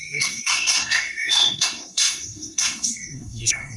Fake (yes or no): yes